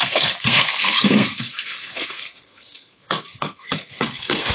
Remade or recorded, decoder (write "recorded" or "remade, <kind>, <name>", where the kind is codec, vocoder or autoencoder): remade, codec, SNAC